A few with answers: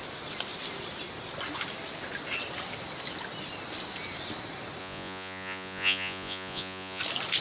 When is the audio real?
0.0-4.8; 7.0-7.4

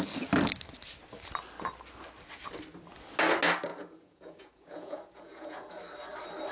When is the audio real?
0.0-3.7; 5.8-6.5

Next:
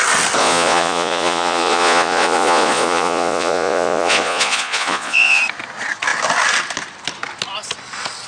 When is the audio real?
0.0-0.4; 5.4-8.3

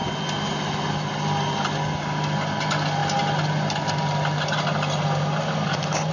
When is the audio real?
0.0-6.1